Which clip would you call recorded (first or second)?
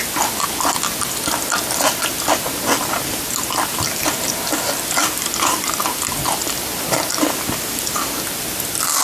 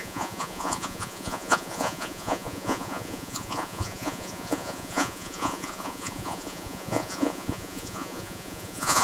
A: first